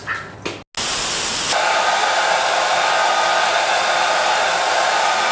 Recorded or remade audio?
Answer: recorded